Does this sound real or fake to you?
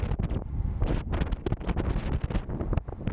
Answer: real